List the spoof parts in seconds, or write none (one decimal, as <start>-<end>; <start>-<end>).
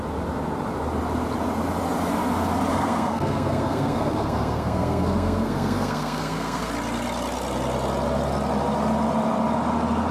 2.7-6.7